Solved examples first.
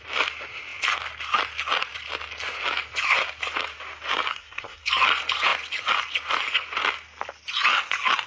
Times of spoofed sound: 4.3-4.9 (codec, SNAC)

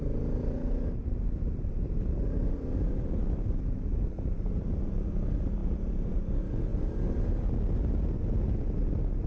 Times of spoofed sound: none

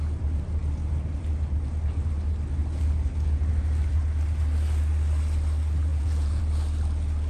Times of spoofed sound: 5.9-6.4 (vocoder, Vocos)

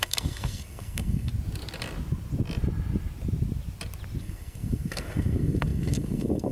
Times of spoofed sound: 0.0-1.3 (codec, SNAC); 4.2-6.5

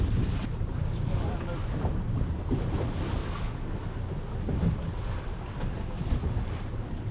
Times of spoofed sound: 0.0-0.5 (vocoder, BigVGAN v2); 2.3-3.2; 5.0-7.1

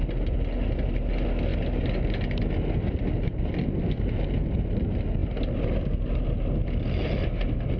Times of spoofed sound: none

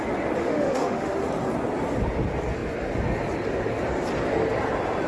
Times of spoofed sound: 0.4-1.2 (autoencoder, DAC-VAE)